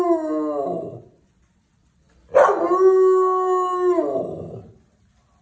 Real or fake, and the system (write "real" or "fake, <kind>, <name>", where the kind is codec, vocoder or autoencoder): real